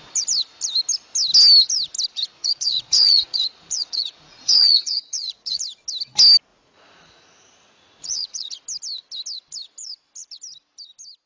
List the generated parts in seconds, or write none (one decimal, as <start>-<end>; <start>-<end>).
2.4-5.6; 6.5-8.5